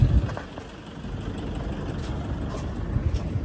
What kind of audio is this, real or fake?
real